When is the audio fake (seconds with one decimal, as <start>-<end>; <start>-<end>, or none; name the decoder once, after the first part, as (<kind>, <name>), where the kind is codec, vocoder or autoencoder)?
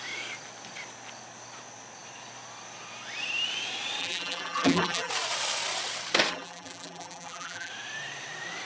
4.0-5.1 (vocoder, BigVGAN v2); 6.3-7.7